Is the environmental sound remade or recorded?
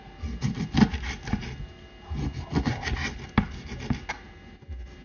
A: recorded